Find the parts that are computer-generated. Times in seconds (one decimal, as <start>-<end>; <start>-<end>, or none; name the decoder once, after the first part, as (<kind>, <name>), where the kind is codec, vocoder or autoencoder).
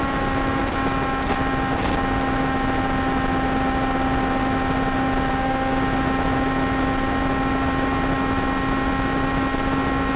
none